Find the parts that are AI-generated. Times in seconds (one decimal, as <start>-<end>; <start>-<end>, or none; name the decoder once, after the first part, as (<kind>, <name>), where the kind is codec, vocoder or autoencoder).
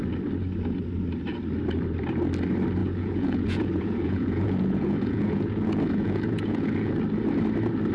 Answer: 2.8-6.9 (vocoder, Vocos)